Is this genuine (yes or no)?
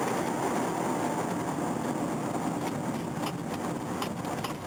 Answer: yes